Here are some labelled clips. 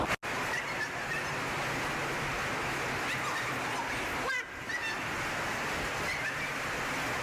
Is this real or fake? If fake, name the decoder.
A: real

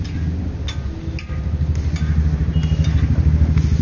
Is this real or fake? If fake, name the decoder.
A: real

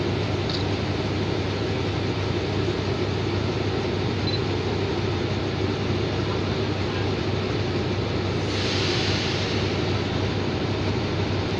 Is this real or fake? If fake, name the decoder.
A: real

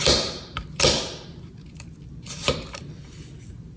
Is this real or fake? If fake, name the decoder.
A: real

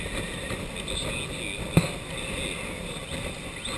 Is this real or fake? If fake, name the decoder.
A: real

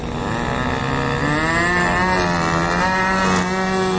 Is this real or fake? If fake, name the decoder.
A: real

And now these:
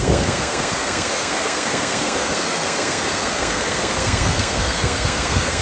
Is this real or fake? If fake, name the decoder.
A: fake, codec, SNAC